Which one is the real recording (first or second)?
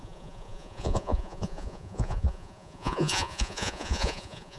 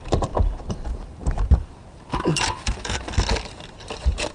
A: second